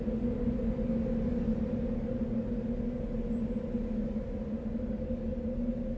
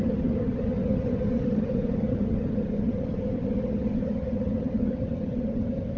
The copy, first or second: second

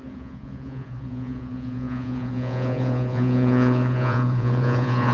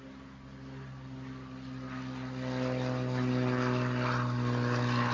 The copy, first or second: first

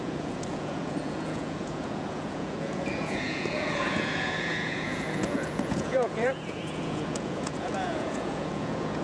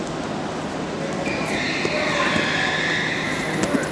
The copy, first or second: first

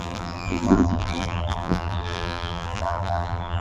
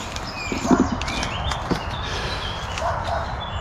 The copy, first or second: first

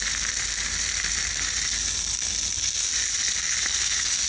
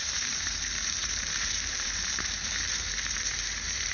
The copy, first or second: second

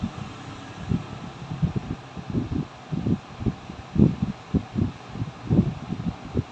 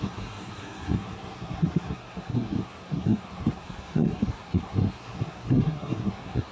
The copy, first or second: second